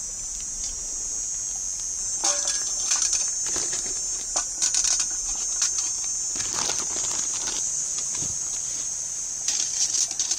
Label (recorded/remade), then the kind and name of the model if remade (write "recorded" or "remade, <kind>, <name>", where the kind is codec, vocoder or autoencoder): recorded